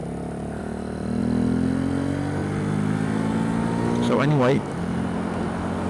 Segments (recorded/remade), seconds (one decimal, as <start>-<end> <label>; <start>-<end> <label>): 0.0-5.9 recorded